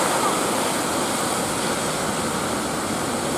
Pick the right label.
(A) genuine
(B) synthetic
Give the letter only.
A